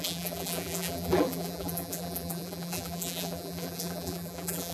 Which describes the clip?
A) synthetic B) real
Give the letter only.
A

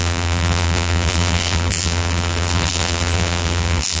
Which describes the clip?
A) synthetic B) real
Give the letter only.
A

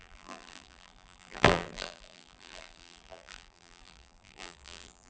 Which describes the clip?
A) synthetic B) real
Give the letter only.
A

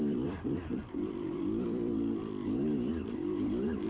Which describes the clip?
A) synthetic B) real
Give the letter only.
A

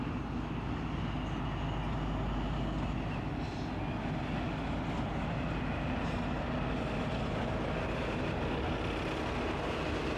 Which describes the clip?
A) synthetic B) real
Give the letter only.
B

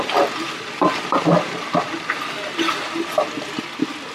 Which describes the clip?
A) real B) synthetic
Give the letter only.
A